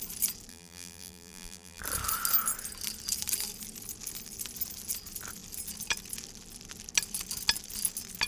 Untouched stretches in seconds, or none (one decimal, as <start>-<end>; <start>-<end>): 0.0-0.5; 1.8-8.3